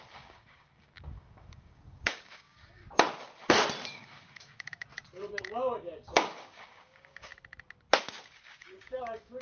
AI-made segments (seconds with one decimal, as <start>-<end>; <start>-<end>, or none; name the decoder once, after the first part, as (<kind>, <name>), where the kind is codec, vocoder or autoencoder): 0.0-2.8 (codec, DAC); 3.9-4.9; 5.4-7.3; 8.0-9.4